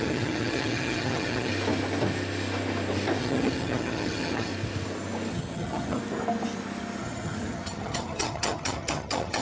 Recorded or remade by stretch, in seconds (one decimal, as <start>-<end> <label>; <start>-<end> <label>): 0.0-1.5 remade; 1.5-3.2 recorded; 3.2-4.5 remade; 4.5-5.3 recorded; 5.3-6.0 remade; 6.0-7.0 recorded; 7.0-9.4 remade

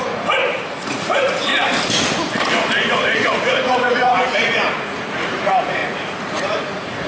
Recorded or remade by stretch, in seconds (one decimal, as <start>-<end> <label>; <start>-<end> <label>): 0.0-1.5 remade; 1.5-2.9 recorded; 2.9-7.1 remade

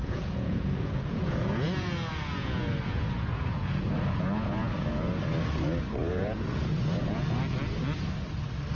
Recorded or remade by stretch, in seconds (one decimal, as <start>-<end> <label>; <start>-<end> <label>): 0.0-5.2 remade; 5.2-6.0 recorded; 6.0-7.2 remade; 7.2-8.7 recorded

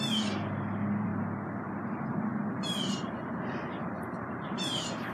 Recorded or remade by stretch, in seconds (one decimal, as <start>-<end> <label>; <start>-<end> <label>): 0.0-1.1 remade; 1.1-2.5 recorded; 2.5-5.1 remade

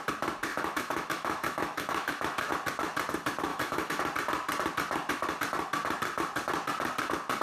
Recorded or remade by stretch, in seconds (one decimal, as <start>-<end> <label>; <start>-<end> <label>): 0.0-0.5 recorded; 0.5-2.5 remade; 2.5-3.5 recorded; 3.5-4.0 remade; 4.0-7.4 recorded

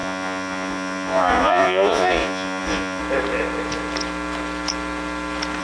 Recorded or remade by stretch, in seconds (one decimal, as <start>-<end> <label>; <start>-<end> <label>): 0.0-3.0 remade; 3.0-5.6 recorded

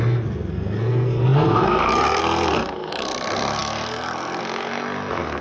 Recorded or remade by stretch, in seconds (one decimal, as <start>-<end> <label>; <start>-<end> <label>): 0.0-5.4 remade